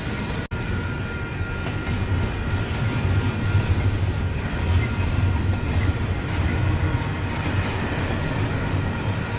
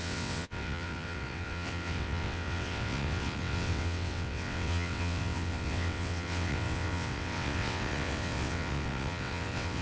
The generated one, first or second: second